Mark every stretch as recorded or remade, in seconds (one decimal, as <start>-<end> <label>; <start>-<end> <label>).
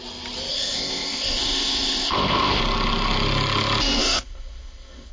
0.0-0.5 recorded; 0.5-2.6 remade; 2.6-4.0 recorded; 4.0-5.1 remade